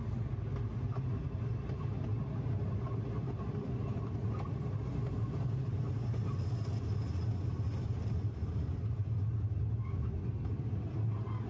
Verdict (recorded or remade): recorded